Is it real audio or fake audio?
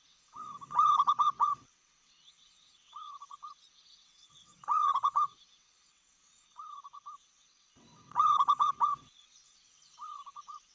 fake